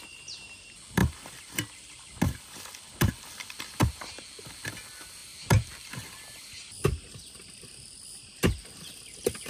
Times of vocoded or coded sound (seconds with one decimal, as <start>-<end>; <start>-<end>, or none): none